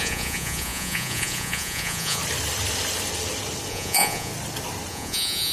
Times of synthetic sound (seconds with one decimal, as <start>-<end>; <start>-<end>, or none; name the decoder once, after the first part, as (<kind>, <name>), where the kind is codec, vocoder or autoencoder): 0.0-2.2 (vocoder, Vocos); 3.7-4.3; 4.9-5.5